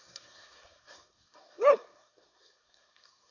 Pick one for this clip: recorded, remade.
remade